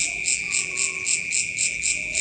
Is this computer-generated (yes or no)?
yes